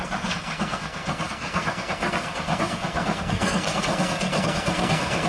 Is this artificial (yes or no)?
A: yes